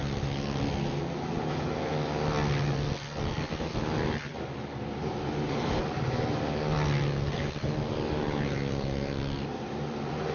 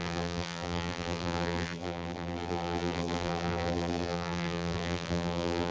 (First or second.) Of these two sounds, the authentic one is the first